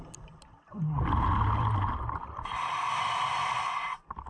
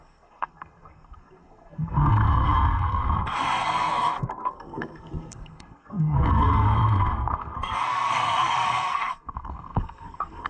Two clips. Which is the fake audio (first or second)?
second